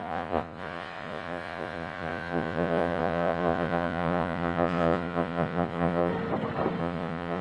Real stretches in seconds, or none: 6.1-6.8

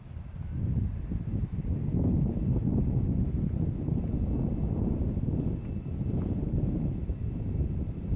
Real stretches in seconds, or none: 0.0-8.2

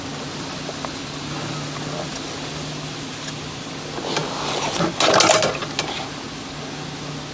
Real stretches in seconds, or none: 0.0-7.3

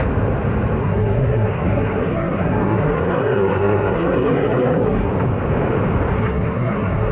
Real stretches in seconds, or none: 0.0-0.8; 5.1-6.1

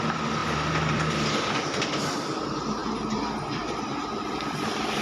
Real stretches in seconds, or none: 2.8-3.6